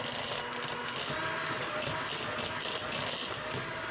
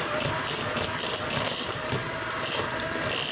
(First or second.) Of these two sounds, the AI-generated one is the second